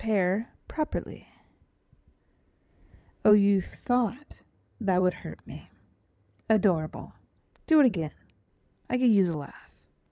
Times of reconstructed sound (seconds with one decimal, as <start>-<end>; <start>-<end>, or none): 3.7-7.4; 7.9-8.5